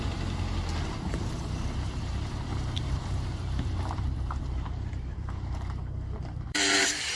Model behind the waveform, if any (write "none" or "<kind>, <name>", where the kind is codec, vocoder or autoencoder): vocoder, BigVGAN v2